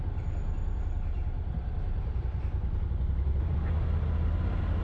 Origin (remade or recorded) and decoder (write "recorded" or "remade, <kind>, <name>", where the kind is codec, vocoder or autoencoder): recorded